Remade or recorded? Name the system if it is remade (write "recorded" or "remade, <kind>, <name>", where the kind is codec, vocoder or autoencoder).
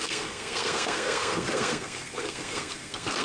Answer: remade, codec, SNAC